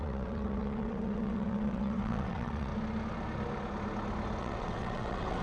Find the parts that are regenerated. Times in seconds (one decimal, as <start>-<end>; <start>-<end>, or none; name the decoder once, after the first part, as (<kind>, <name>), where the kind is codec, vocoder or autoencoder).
0.0-2.7 (vocoder, WaveNeXt); 4.4-5.4